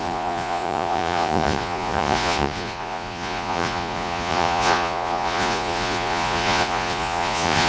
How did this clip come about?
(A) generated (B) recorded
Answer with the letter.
A